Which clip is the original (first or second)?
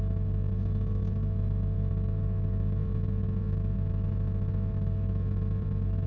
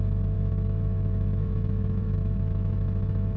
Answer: first